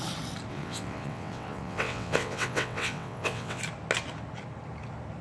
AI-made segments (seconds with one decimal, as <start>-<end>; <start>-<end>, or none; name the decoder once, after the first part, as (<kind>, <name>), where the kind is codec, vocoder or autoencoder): 0.5-3.6 (vocoder, WaveNeXt)